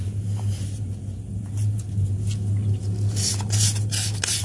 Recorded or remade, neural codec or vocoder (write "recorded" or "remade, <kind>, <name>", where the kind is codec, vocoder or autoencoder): recorded